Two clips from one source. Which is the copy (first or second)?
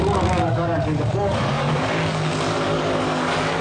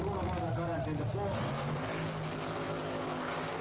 first